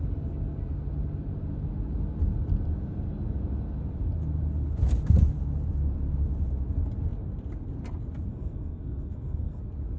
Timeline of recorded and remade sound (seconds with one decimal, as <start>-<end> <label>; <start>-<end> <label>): 0.0-8.3 recorded; 8.3-9.6 remade; 9.6-10.0 recorded